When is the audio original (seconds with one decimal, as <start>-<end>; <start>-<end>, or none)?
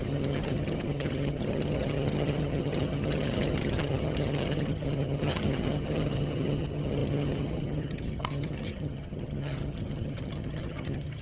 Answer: none